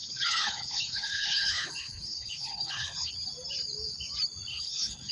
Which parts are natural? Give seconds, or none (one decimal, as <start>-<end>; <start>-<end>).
3.1-4.5

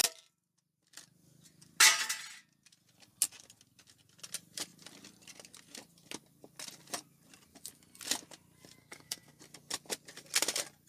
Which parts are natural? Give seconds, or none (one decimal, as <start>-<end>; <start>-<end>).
0.0-8.8; 9.4-10.9

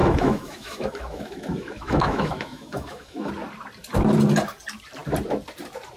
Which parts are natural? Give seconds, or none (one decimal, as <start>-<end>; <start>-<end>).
3.3-6.0

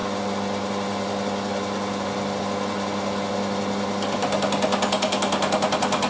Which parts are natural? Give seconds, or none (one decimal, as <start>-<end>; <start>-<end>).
0.0-6.1

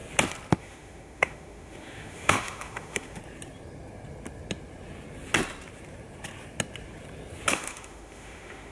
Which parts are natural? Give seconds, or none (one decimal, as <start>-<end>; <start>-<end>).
0.0-0.6; 3.2-7.5

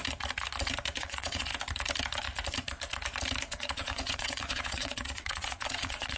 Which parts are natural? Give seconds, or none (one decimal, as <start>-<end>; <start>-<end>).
0.0-1.0; 1.5-3.5

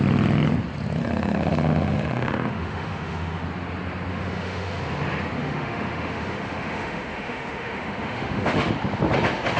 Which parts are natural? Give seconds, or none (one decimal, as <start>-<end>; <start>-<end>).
0.0-1.0; 3.4-4.1; 4.8-5.4; 8.7-9.6

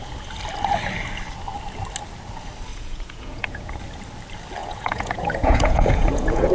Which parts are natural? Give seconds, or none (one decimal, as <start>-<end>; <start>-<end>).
0.0-2.7; 3.8-4.6